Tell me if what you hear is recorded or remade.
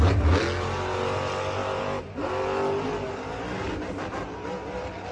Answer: recorded